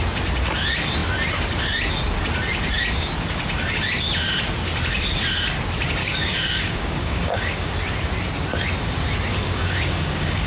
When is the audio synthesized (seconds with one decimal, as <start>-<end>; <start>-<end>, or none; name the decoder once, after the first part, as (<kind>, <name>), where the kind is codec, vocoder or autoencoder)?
6.0-7.7 (codec, DAC); 9.3-10.5